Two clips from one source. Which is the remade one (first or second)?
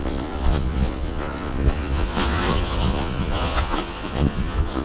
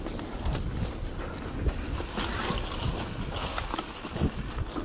first